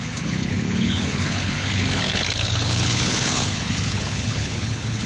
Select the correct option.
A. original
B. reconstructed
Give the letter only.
B